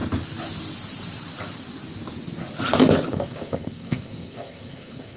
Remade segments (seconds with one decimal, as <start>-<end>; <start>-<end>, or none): 3.1-5.2